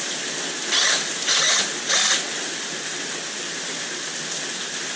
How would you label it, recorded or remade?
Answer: recorded